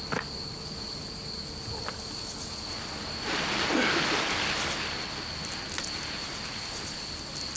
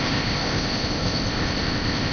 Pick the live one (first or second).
first